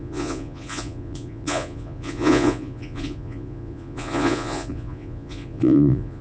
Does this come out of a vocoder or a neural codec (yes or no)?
yes